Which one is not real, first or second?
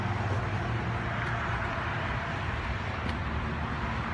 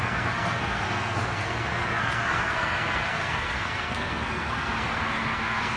second